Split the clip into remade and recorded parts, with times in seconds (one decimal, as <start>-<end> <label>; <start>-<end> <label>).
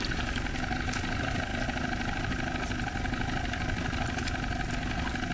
0.0-5.3 recorded